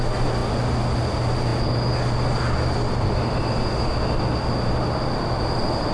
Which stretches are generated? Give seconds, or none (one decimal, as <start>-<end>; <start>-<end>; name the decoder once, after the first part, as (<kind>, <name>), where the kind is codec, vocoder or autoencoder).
none